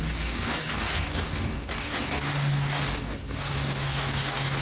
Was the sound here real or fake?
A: fake